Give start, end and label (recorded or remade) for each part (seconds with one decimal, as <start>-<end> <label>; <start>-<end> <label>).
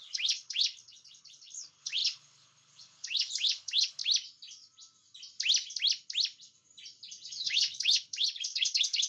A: 0.0-4.0 remade; 4.0-7.3 recorded; 7.3-9.1 remade